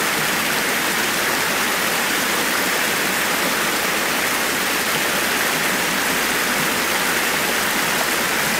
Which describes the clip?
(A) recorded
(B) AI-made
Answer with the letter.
A